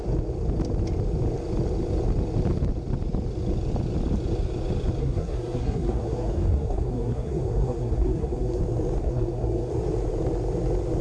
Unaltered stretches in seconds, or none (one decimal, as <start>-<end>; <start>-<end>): 0.0-5.0; 8.6-9.0; 9.7-11.0

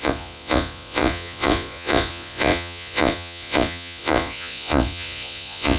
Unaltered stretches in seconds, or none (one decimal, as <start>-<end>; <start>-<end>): none